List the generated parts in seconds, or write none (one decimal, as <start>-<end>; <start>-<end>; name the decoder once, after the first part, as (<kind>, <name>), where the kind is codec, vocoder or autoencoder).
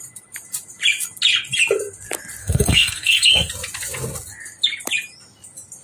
2.4-3.5 (codec, SNAC)